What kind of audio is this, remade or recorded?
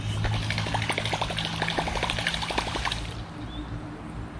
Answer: recorded